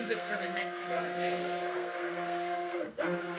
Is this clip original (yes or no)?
no